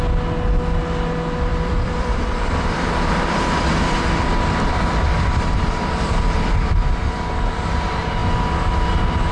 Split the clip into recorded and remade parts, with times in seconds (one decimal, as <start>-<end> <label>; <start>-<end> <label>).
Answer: 0.0-1.5 recorded; 1.5-6.2 remade; 6.2-9.3 recorded

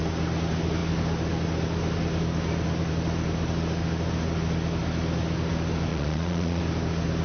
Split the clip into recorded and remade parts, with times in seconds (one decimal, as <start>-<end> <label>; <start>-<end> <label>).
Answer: 0.0-5.9 recorded; 5.9-6.6 remade; 6.6-7.2 recorded

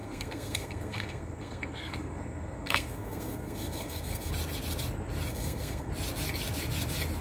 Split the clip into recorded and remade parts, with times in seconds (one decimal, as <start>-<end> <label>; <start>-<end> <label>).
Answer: 0.0-4.3 remade; 4.3-5.3 recorded; 5.3-5.9 remade; 5.9-7.2 recorded